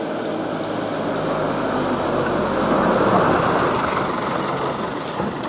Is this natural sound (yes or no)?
yes